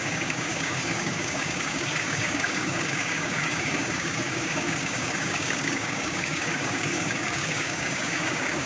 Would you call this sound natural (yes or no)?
no